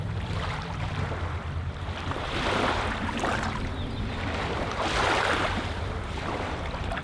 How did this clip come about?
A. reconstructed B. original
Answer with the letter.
A